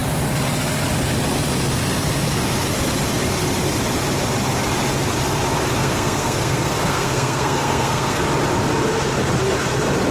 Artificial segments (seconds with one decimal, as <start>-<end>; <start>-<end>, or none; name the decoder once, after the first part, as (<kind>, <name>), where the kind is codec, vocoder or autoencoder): 5.8-8.2 (codec, SNAC)